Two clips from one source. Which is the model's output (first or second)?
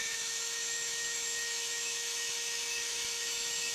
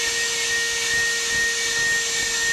first